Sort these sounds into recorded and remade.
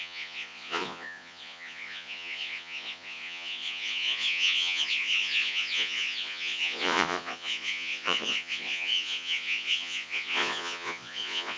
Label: remade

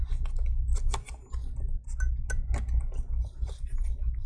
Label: recorded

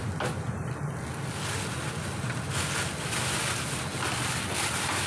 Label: recorded